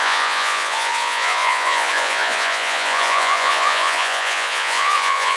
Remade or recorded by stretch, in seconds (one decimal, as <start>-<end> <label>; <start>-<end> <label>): 0.0-5.4 remade